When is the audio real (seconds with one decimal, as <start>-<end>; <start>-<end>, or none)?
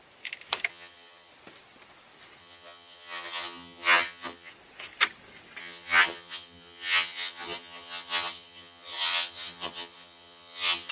0.0-0.7; 1.3-2.4; 4.5-5.6